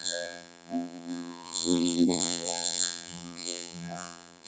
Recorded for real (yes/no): no